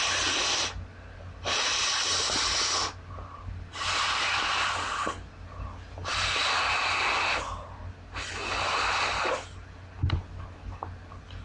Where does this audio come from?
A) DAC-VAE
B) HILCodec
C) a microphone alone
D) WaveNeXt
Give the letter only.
C